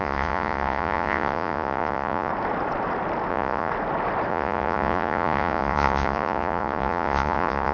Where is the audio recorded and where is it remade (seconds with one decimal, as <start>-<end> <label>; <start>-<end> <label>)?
0.0-2.3 remade; 2.3-3.3 recorded; 3.3-3.7 remade; 3.7-4.3 recorded; 4.3-7.7 remade

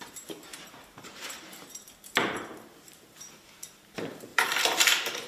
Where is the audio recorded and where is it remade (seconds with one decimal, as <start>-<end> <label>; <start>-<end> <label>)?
0.0-5.3 remade

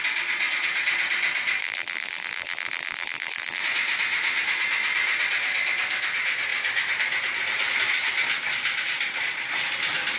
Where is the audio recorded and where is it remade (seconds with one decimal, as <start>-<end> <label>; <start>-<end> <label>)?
0.0-1.6 recorded; 1.6-3.6 remade; 3.6-10.2 recorded

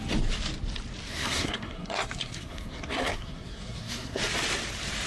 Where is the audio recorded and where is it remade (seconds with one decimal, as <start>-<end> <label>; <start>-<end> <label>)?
0.0-1.1 recorded; 1.1-4.2 remade; 4.2-5.1 recorded